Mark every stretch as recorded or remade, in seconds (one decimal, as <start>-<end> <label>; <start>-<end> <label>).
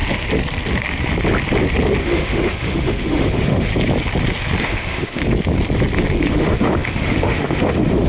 0.0-2.0 recorded; 2.0-3.7 remade; 3.7-4.6 recorded; 4.6-5.2 remade; 5.2-6.3 recorded; 6.3-8.1 remade